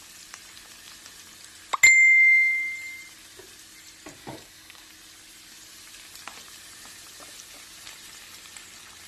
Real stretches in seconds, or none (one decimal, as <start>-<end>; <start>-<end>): 0.0-4.2; 4.9-9.1